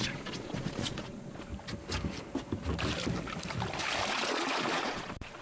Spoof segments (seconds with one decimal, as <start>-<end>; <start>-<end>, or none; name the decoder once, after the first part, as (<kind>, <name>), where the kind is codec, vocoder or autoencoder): 0.0-1.5 (vocoder, Vocos); 4.1-5.4